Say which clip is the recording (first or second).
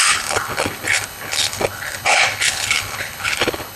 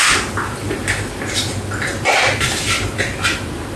second